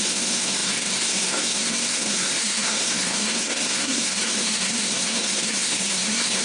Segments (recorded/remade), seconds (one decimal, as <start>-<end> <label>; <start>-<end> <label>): 0.0-6.4 remade